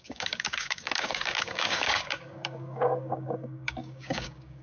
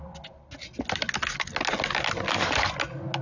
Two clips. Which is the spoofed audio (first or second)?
first